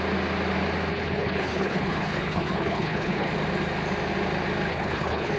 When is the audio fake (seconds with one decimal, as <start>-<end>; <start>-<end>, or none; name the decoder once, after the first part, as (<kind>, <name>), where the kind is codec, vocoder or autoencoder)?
0.9-3.3 (codec, HILCodec); 4.7-5.4